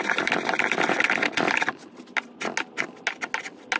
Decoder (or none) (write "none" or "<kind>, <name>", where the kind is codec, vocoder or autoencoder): none